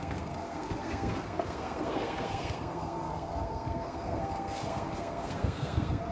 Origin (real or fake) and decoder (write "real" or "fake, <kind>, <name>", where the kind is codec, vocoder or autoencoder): fake, codec, SNAC